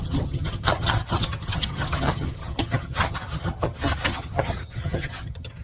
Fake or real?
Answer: fake